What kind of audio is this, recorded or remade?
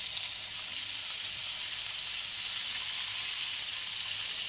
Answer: recorded